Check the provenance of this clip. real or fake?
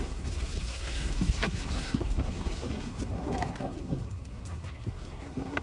fake